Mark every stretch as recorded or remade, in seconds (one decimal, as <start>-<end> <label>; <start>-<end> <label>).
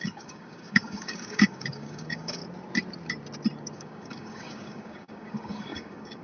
0.0-2.4 remade; 2.4-3.7 recorded; 3.7-6.2 remade